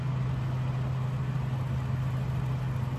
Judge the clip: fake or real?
real